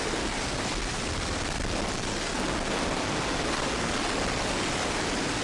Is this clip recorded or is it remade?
recorded